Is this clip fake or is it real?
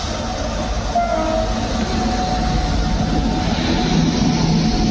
real